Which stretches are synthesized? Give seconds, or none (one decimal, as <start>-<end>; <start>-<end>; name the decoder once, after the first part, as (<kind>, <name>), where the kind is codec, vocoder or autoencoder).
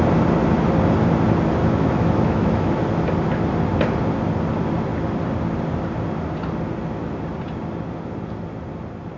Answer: 1.6-2.8 (autoencoder, DAC-VAE)